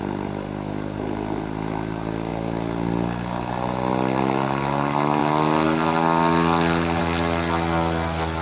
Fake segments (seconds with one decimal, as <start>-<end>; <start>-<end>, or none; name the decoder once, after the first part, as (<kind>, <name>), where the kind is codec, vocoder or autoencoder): none